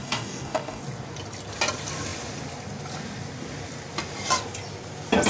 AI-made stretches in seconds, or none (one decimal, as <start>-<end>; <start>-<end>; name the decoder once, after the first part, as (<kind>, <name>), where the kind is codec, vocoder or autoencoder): 0.0-0.8 (codec, DAC)